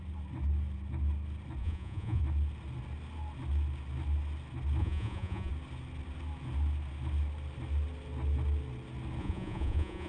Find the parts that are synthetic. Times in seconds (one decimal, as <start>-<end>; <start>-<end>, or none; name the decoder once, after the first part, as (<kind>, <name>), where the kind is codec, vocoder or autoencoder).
1.6-2.2 (vocoder, Vocos); 4.8-5.5; 9.2-10.1

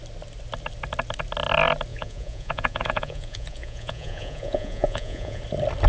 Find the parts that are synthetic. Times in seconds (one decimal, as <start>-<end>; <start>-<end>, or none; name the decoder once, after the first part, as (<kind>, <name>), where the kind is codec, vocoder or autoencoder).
1.9-5.4 (vocoder, Vocos)

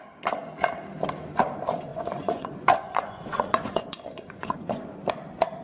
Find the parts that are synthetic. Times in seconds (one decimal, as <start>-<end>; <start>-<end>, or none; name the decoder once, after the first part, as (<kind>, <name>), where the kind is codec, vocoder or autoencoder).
1.9-5.1 (vocoder, Vocos)

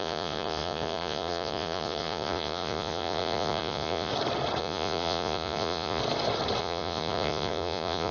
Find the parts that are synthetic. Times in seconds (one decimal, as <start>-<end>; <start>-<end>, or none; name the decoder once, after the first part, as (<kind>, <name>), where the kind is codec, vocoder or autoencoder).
0.0-4.1 (vocoder, Vocos); 4.6-6.0; 6.6-8.1

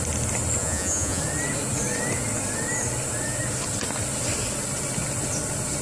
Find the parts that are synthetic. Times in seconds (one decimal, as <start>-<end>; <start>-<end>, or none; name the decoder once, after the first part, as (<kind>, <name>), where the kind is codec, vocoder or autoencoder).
0.6-1.2 (vocoder, Vocos)

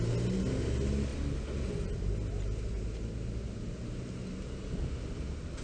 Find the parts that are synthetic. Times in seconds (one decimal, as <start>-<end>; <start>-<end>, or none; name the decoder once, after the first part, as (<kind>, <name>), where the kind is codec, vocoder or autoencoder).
none